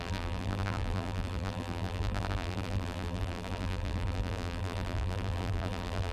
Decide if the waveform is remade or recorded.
remade